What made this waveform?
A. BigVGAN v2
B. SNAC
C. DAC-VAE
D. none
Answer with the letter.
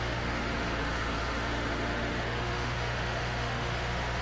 C